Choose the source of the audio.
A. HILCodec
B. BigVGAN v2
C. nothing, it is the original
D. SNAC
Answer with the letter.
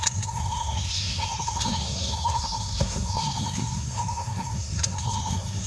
D